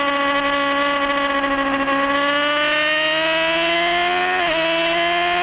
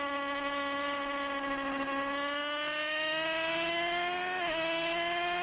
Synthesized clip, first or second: second